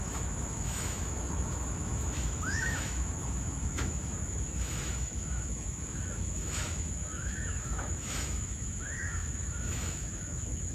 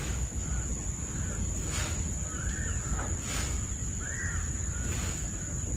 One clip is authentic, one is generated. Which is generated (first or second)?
first